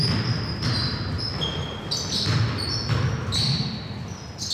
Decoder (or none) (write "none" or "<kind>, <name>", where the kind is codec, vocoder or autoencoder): none